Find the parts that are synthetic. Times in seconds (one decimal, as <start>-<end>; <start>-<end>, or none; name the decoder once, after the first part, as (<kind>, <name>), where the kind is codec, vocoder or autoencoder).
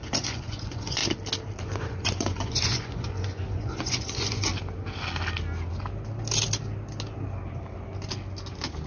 0.0-1.0 (vocoder, Vocos); 1.6-4.5